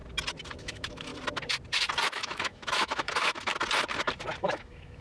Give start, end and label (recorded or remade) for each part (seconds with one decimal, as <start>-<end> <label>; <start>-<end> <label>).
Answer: 0.0-0.6 recorded; 0.6-1.1 remade; 1.1-2.1 recorded; 2.1-3.5 remade; 3.5-4.4 recorded; 4.4-5.0 remade